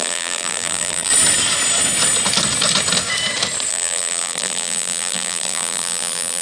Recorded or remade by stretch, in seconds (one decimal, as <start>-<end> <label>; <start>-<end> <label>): 0.0-1.1 remade; 1.1-3.7 recorded; 3.7-6.4 remade